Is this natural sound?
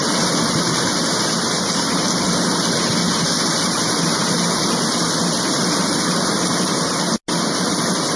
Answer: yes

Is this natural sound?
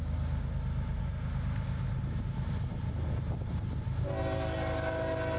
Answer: yes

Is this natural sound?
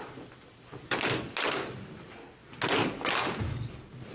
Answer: yes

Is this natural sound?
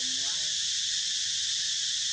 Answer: yes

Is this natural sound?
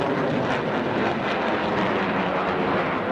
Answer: yes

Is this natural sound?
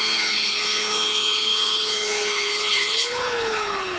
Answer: no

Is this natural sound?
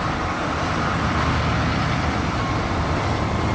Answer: yes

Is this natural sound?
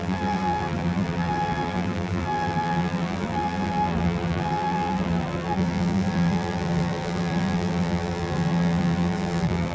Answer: no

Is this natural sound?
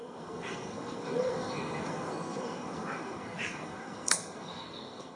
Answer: no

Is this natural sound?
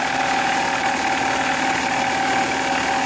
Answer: yes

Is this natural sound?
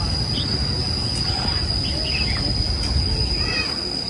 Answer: yes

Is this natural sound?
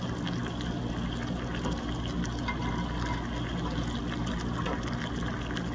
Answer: yes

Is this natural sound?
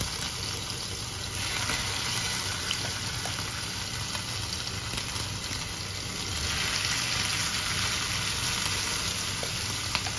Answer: yes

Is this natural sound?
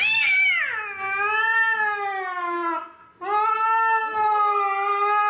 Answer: yes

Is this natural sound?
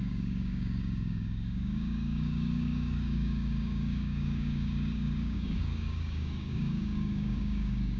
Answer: no